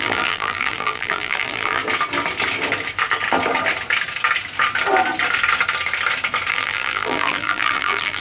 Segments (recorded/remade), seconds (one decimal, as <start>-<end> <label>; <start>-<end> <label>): 0.0-1.8 remade; 1.8-6.5 recorded; 6.5-8.2 remade